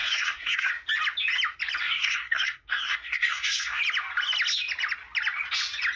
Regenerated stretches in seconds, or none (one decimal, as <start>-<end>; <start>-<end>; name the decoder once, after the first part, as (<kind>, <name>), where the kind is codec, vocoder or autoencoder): 0.0-0.7 (codec, SNAC); 1.8-3.8